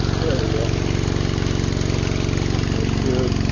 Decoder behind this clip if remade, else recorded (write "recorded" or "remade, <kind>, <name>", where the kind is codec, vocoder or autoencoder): recorded